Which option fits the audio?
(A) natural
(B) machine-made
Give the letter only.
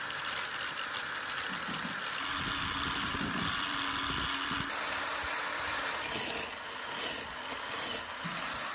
A